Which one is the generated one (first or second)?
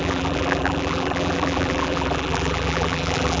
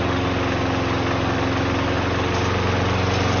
first